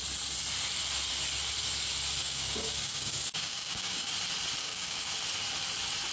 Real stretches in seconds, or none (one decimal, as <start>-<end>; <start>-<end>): 0.0-2.2; 4.1-4.6; 5.1-6.1